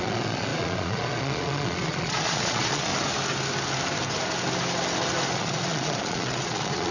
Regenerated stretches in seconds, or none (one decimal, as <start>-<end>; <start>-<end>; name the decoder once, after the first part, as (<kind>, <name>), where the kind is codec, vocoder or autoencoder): 0.0-2.9 (vocoder, Vocos); 5.3-6.9